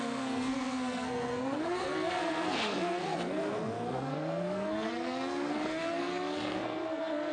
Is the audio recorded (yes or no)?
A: no